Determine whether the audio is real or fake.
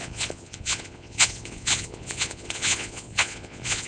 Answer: fake